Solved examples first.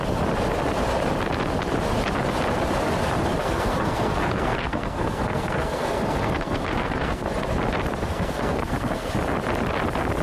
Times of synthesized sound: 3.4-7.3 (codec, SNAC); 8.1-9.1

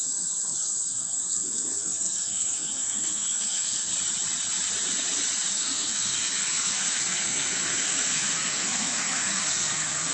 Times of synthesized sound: 0.0-3.9 (codec, SNAC); 5.5-10.1